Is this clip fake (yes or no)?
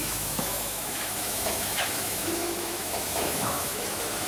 yes